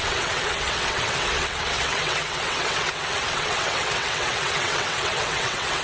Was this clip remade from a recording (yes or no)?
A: yes